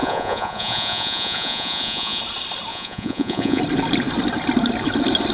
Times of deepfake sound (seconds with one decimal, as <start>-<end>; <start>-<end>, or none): 0.0-2.2; 2.7-3.6